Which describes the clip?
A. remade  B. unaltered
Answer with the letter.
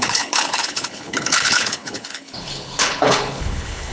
A